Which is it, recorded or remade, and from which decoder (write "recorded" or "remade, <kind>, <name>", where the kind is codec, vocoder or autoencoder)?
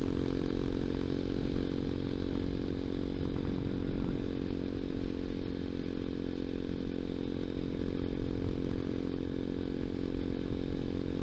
recorded